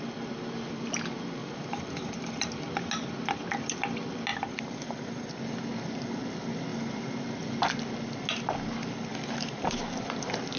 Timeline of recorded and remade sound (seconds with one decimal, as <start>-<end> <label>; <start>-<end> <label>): 0.0-1.4 recorded; 1.4-2.6 remade; 2.6-4.3 recorded; 4.3-5.4 remade; 5.4-9.1 recorded; 9.1-9.8 remade; 9.8-10.6 recorded